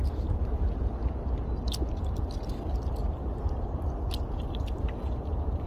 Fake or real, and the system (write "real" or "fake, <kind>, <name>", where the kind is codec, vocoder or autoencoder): real